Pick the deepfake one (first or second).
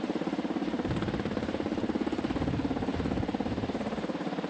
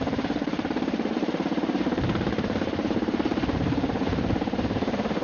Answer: second